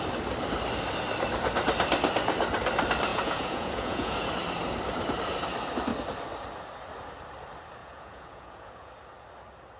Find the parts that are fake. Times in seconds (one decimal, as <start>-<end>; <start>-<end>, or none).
3.1-4.3; 7.8-8.9